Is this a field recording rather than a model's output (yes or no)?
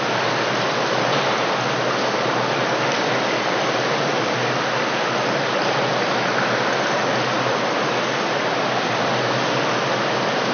yes